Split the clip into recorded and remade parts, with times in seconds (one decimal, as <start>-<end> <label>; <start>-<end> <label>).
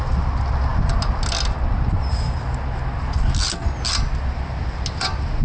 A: 0.0-5.4 recorded